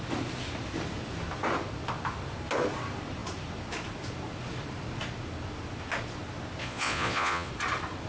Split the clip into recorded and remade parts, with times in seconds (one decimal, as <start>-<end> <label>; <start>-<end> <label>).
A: 0.0-6.6 recorded; 6.6-7.5 remade; 7.5-8.1 recorded